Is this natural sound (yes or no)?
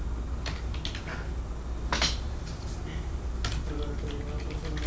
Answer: yes